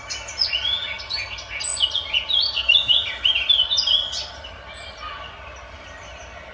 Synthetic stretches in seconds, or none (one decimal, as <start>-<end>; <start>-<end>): none